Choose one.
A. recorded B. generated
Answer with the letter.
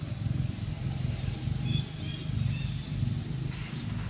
A